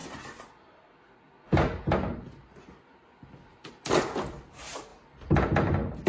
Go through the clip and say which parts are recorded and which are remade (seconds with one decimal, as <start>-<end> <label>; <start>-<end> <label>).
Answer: 0.0-6.1 recorded